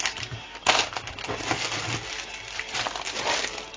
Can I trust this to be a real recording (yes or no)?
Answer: no